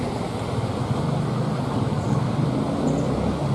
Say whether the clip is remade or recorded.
recorded